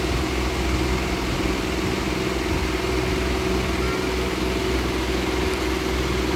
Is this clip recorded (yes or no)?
yes